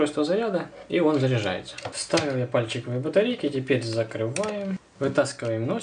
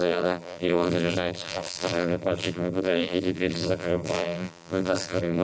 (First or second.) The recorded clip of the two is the first